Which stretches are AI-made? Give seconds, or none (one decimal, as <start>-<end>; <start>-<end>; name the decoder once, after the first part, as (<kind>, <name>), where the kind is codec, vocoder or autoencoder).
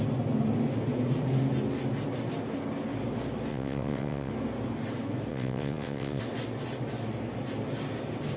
3.5-4.3 (vocoder, WaveNeXt); 5.3-6.2